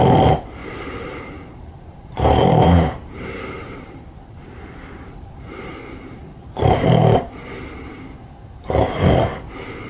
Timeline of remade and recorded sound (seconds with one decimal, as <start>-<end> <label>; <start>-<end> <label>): 0.0-0.6 recorded; 0.6-5.7 remade; 5.7-6.2 recorded; 6.2-7.0 remade; 7.0-9.9 recorded